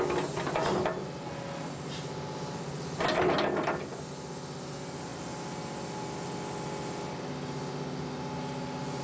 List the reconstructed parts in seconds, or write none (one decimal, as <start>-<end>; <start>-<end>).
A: none